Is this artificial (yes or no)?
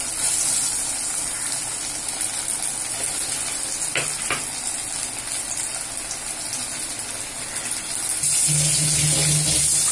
no